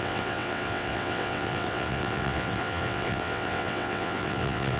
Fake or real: fake